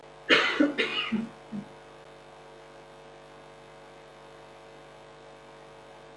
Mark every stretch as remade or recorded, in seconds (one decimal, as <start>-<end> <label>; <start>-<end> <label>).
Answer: 0.0-6.2 recorded